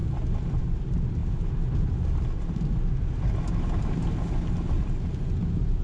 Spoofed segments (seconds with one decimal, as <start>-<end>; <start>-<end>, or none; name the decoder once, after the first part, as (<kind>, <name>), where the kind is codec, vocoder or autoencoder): none